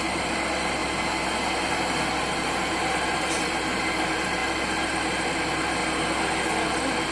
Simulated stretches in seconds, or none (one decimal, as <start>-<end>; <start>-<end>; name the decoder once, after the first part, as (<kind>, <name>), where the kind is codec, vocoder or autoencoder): 0.0-0.8 (vocoder, BigVGAN v2); 1.7-5.8; 6.6-7.1